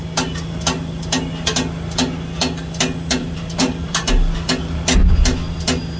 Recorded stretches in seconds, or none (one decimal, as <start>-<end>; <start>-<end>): 0.0-3.2; 4.1-6.0